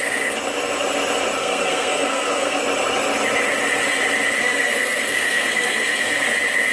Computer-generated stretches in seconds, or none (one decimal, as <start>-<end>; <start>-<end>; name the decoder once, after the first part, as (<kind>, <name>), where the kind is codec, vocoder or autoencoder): 1.4-2.6 (codec, SNAC); 4.4-6.2